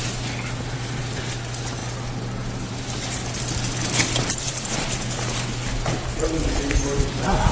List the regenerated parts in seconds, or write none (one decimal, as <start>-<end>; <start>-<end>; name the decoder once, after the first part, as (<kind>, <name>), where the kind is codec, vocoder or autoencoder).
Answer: none